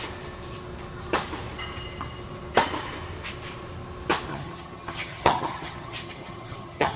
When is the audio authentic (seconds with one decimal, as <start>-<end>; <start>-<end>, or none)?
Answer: 0.0-4.3